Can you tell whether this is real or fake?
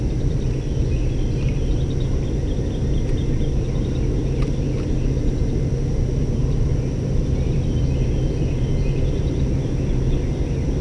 real